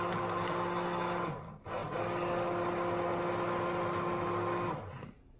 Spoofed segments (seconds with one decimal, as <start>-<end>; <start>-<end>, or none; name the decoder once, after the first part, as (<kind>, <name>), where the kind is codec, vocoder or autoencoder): none